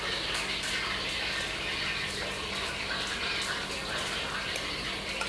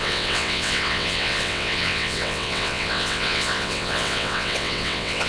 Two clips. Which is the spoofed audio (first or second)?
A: second